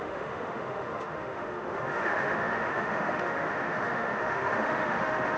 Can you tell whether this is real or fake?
fake